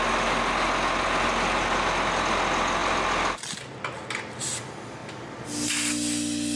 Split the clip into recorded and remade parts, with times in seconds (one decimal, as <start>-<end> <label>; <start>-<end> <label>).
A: 0.0-6.6 recorded